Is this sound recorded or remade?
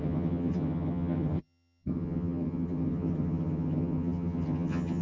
remade